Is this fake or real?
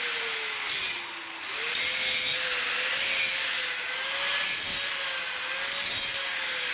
real